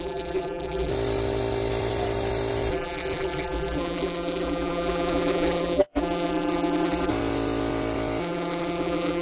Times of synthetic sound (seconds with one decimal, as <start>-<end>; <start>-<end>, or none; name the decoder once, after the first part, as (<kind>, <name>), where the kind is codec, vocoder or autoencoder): 0.0-0.9 (vocoder, BigVGAN v2); 2.7-7.1; 8.2-9.2